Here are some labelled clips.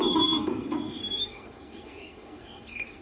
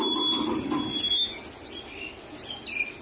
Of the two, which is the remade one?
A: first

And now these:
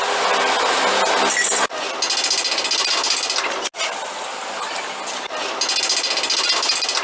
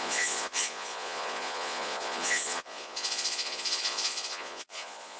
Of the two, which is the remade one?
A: second